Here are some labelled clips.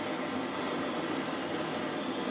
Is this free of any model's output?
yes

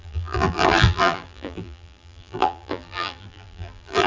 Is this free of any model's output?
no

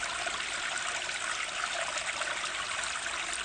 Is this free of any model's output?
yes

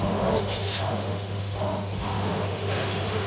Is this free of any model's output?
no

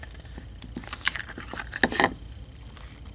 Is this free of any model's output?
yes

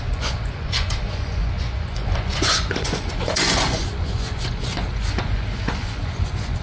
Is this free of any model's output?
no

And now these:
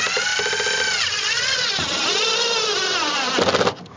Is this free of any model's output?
yes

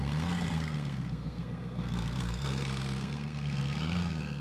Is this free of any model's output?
no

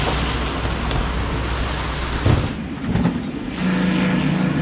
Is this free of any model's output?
yes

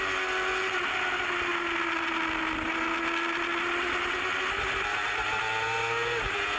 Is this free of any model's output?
yes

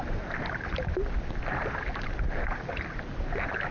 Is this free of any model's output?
yes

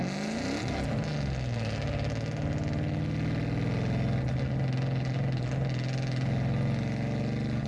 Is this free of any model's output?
yes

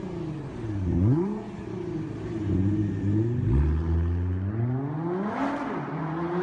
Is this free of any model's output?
yes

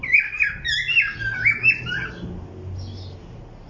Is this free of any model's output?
yes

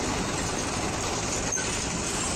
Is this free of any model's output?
no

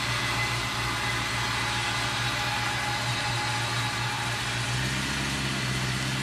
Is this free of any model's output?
yes